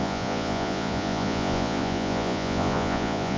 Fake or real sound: fake